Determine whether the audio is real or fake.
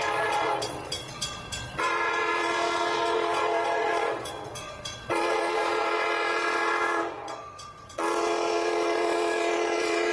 fake